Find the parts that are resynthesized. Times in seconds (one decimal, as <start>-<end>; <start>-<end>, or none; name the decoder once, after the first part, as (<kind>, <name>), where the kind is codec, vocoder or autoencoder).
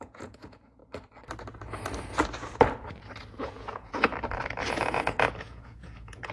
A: 0.0-0.8 (vocoder, Vocos); 3.3-4.1; 4.7-6.3